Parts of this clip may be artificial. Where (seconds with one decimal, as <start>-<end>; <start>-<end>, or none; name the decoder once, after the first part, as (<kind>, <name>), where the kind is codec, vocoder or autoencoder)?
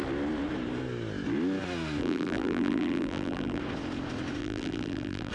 2.0-3.6 (vocoder, BigVGAN v2); 4.4-5.3